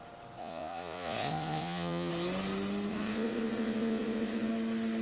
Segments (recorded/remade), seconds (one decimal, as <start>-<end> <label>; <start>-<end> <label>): 0.0-0.4 recorded; 0.4-2.1 remade; 2.1-2.9 recorded; 2.9-4.5 remade; 4.5-5.0 recorded

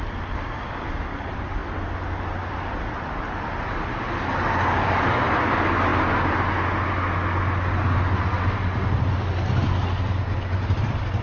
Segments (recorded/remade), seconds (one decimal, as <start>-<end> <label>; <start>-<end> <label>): 0.0-11.2 recorded

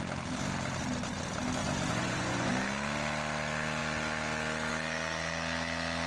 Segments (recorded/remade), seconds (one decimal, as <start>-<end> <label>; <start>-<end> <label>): 0.0-1.6 recorded; 1.6-2.5 remade; 2.5-6.1 recorded

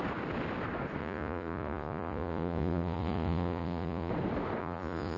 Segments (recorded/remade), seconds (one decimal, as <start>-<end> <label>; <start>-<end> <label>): 0.0-1.0 recorded; 1.0-4.1 remade; 4.1-4.6 recorded; 4.6-5.2 remade

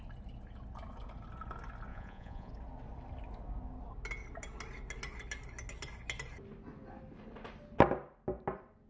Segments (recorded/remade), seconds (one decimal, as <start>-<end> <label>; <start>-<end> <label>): 0.0-1.9 recorded; 1.9-2.5 remade; 2.5-8.9 recorded